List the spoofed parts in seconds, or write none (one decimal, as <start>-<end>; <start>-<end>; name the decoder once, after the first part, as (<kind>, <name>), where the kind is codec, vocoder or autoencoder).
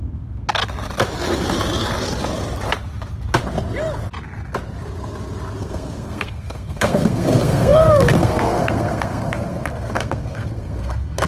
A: 0.0-0.6 (codec, SNAC); 5.6-11.3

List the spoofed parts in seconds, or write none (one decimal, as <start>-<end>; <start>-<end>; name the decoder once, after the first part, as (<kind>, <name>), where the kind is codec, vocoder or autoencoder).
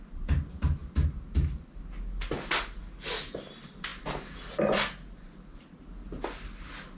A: none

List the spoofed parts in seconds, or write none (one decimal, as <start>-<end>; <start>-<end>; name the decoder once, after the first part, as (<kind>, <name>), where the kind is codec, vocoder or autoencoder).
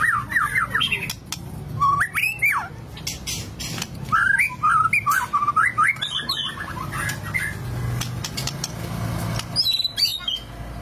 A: none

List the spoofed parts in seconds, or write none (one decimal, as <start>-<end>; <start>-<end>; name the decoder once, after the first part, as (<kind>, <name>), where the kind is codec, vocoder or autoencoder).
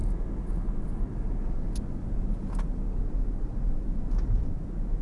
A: none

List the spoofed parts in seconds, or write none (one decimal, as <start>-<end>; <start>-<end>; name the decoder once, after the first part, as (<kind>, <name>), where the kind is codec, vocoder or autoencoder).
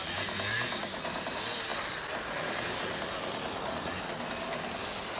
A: none